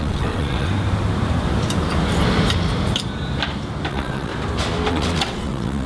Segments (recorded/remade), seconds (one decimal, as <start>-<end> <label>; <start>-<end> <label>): 0.0-0.7 remade; 0.7-3.9 recorded; 3.9-4.3 remade; 4.3-4.9 recorded; 4.9-5.9 remade